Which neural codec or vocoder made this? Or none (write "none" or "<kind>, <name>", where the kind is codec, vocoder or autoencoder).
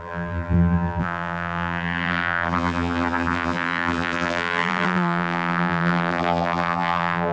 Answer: vocoder, BigVGAN v2